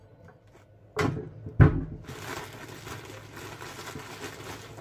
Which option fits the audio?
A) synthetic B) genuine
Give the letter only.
B